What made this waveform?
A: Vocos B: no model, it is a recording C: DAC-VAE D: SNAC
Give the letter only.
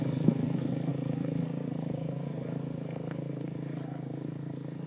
D